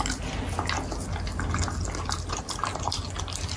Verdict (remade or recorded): recorded